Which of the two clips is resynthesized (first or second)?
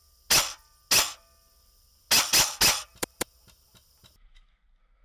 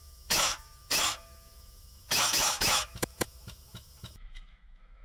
second